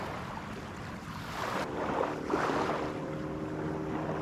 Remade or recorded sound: recorded